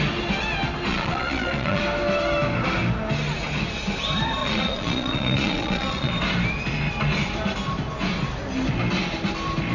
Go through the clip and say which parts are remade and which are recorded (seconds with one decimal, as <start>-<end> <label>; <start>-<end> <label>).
0.0-0.9 recorded; 0.9-1.8 remade; 1.8-4.4 recorded; 4.4-6.1 remade; 6.1-9.7 recorded